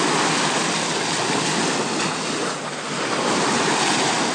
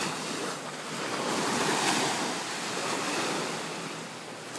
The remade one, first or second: second